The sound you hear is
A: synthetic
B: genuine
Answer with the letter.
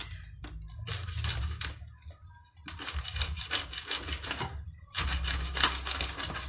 B